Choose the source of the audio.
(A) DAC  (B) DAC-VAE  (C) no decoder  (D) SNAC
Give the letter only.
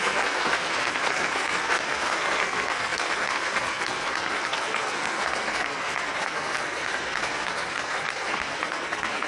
D